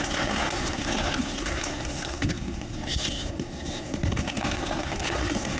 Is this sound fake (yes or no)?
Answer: yes